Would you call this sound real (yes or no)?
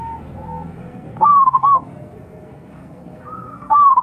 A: no